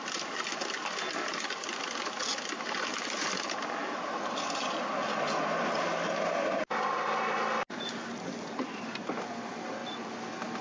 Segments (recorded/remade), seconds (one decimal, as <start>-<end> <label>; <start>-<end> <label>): 0.0-10.6 recorded